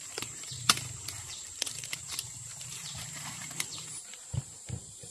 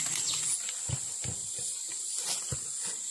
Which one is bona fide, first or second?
second